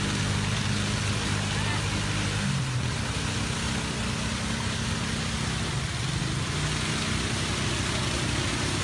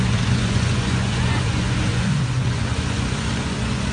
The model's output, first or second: second